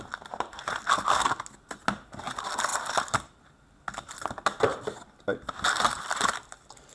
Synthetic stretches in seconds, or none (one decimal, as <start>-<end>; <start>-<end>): 2.7-3.5; 4.7-6.5